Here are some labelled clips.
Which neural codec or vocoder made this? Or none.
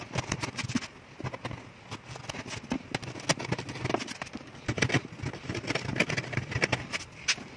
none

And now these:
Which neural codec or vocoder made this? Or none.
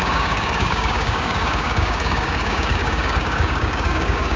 codec, DAC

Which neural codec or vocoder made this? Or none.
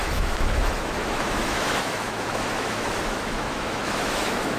autoencoder, DAC-VAE